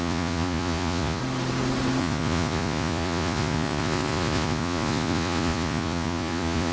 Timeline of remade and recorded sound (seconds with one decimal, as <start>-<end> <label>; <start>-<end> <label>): 0.0-1.2 remade; 1.2-2.0 recorded; 2.0-6.7 remade